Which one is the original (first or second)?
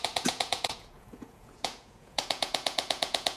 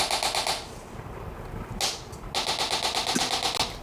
second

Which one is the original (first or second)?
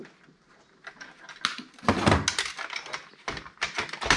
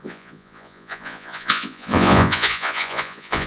first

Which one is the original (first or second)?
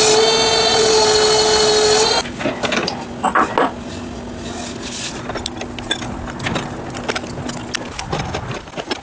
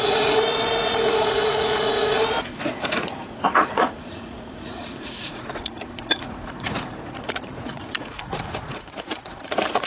first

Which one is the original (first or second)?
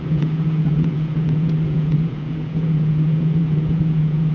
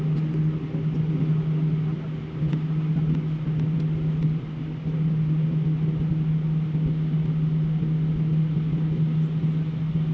second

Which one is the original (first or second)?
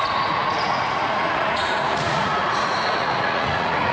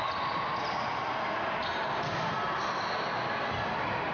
second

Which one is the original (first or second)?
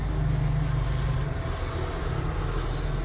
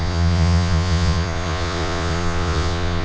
first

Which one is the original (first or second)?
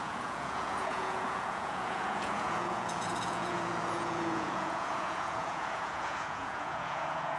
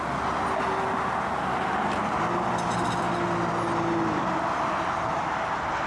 second